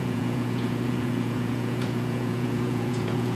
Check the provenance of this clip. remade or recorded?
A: remade